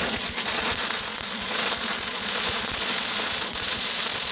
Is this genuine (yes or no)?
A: no